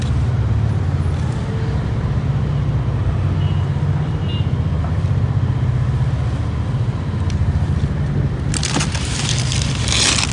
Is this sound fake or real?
real